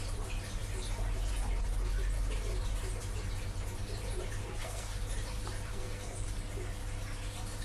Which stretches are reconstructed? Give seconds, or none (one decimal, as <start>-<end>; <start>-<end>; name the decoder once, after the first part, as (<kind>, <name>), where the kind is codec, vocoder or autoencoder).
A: 4.4-5.0 (codec, SNAC); 5.7-6.3